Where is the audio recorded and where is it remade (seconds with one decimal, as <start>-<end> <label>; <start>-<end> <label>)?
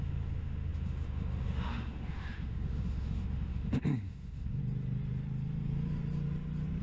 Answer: 0.0-4.6 remade; 4.6-6.8 recorded